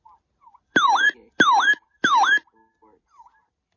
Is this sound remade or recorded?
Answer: remade